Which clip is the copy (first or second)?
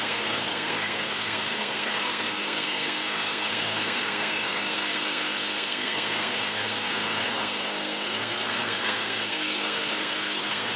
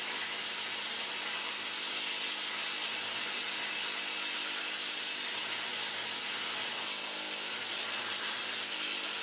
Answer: first